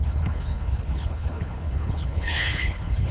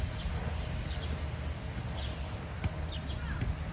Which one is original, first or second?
second